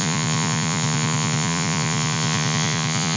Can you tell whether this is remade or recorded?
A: remade